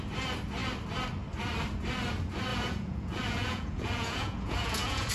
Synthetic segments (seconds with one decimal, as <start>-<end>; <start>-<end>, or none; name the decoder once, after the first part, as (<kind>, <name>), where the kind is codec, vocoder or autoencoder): 2.5-5.1 (vocoder, Vocos)